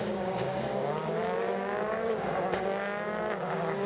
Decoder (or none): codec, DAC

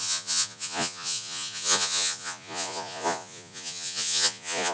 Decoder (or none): vocoder, Vocos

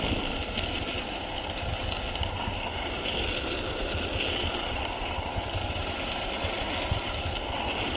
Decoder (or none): none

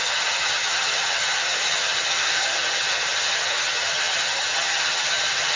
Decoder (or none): vocoder, HiFi-GAN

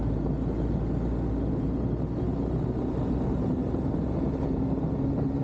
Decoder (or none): none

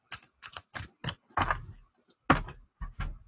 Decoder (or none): none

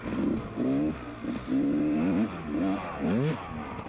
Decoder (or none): none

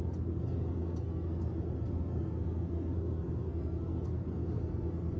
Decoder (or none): codec, SNAC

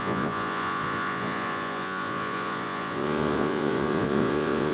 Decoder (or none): vocoder, Vocos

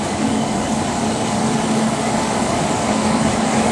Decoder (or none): codec, DAC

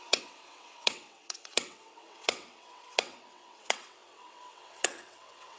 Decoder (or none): vocoder, WaveNeXt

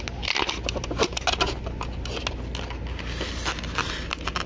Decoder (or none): none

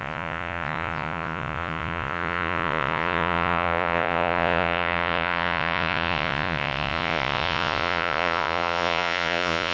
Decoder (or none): vocoder, Vocos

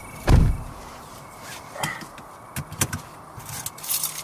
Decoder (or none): none